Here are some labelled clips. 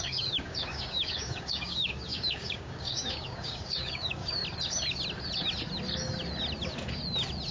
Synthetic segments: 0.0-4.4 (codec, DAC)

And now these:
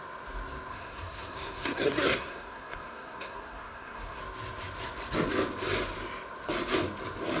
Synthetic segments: 0.7-4.2 (codec, SNAC)

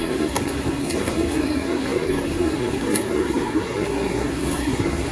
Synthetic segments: 0.0-5.1 (codec, SNAC)

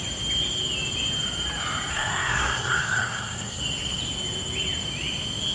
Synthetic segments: 1.9-3.6 (codec, SNAC)

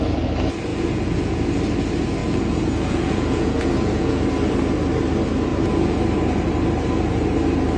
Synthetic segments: 0.7-1.4 (vocoder, Vocos); 2.2-4.2; 5.5-6.0

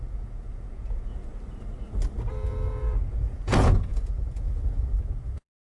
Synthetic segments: 0.0-1.1 (vocoder, Vocos); 2.2-5.7

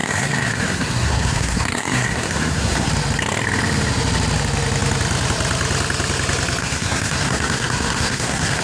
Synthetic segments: 0.0-2.9 (codec, SNAC); 6.6-8.6